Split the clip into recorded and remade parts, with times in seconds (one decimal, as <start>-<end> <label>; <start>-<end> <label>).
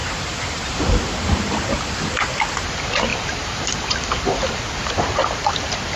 0.0-1.4 remade; 1.4-3.1 recorded; 3.1-4.4 remade; 4.4-6.0 recorded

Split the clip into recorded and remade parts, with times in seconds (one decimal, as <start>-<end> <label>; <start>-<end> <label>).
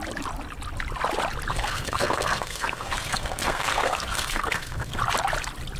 0.0-1.5 recorded; 1.5-5.0 remade; 5.0-5.8 recorded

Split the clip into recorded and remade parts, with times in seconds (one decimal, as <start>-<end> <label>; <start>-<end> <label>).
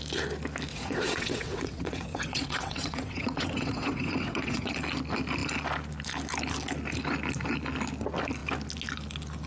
0.0-0.7 recorded; 0.7-4.7 remade; 4.7-9.5 recorded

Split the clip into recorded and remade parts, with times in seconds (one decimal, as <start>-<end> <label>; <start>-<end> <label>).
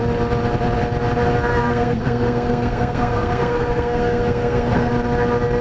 0.0-1.5 recorded; 1.5-4.9 remade; 4.9-5.6 recorded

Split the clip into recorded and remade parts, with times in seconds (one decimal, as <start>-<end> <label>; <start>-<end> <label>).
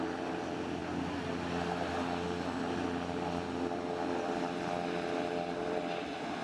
0.0-6.4 recorded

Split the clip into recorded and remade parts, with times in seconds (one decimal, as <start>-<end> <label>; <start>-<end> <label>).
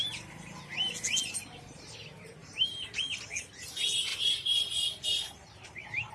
0.0-2.4 recorded; 2.4-3.2 remade; 3.2-4.1 recorded; 4.1-6.1 remade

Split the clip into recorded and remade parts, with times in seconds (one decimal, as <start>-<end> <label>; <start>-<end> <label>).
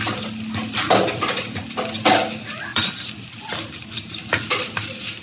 0.0-2.7 recorded; 2.7-3.5 remade; 3.5-5.2 recorded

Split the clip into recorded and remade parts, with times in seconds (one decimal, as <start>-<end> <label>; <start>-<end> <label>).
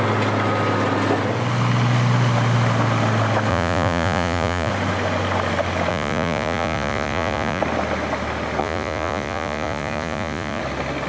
0.0-3.5 recorded; 3.5-4.7 remade; 4.7-5.9 recorded; 5.9-7.6 remade; 7.6-8.6 recorded; 8.6-10.6 remade; 10.6-11.1 recorded